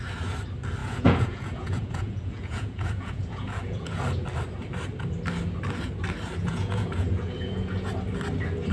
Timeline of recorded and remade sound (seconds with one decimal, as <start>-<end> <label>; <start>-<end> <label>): 0.0-0.8 recorded; 0.8-4.0 remade; 4.0-6.4 recorded; 6.4-7.9 remade; 7.9-8.7 recorded